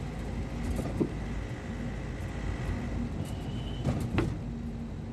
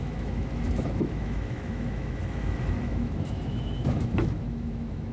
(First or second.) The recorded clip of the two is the first